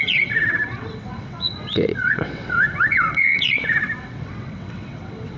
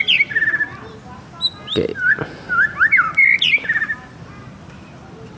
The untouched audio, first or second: second